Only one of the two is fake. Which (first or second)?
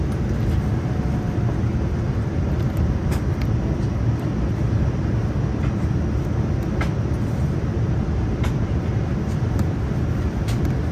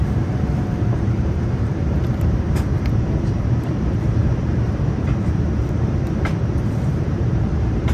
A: second